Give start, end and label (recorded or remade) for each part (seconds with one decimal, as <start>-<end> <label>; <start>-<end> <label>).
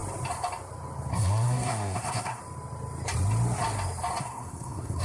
0.0-1.1 recorded; 1.1-2.4 remade; 2.4-4.2 recorded; 4.2-5.0 remade